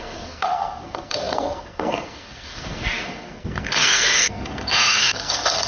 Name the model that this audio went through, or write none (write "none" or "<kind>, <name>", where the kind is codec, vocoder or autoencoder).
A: codec, SNAC